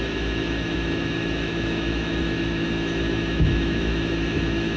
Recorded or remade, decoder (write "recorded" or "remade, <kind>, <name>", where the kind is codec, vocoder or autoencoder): remade, autoencoder, DAC-VAE